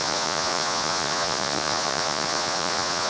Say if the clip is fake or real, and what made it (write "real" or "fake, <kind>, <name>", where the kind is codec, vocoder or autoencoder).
fake, vocoder, Vocos